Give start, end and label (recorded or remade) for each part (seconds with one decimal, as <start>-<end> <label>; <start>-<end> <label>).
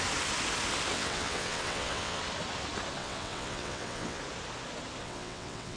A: 0.0-0.9 recorded; 0.9-2.2 remade; 2.2-3.0 recorded; 3.0-4.2 remade; 4.2-5.0 recorded; 5.0-5.8 remade